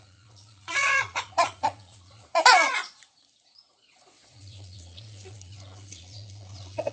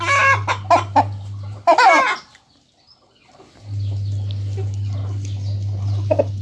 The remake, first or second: first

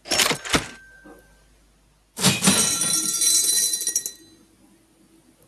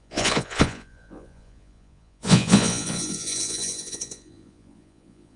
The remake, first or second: second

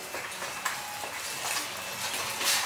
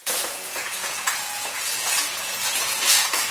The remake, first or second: second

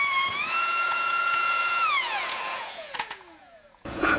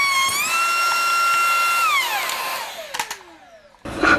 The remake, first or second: first